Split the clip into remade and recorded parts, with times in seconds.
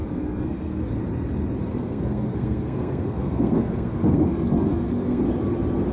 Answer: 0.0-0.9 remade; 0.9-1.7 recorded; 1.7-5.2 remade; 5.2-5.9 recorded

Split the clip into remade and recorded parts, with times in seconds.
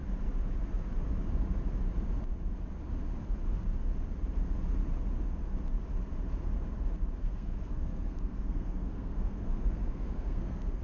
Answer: 0.0-7.2 recorded; 7.2-10.8 remade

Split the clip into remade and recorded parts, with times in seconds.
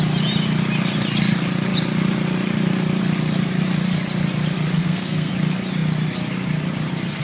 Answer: 0.0-4.8 recorded; 4.8-5.3 remade; 5.3-7.2 recorded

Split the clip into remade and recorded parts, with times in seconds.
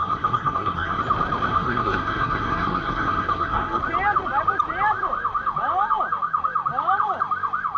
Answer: 0.0-1.0 remade; 1.0-1.5 recorded; 1.5-3.8 remade; 3.8-7.8 recorded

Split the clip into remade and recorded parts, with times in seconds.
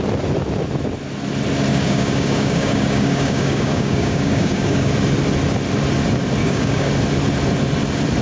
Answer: 0.0-1.7 recorded; 1.7-4.9 remade; 4.9-6.4 recorded; 6.4-6.9 remade; 6.9-8.2 recorded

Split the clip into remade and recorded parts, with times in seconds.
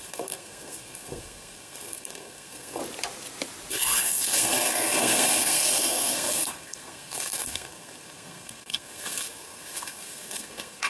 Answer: 0.0-2.8 remade; 2.8-3.7 recorded; 3.7-10.9 remade